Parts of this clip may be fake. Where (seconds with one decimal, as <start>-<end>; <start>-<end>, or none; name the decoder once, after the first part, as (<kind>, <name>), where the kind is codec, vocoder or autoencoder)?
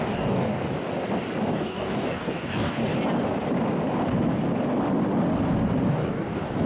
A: 0.0-0.6 (codec, DAC); 1.5-2.8; 5.9-6.7